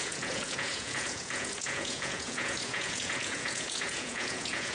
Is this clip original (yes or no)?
no